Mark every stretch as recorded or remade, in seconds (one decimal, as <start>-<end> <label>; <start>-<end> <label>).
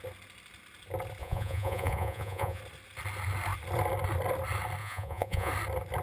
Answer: 0.0-1.2 recorded; 1.2-2.6 remade; 2.6-4.8 recorded; 4.8-5.5 remade; 5.5-6.0 recorded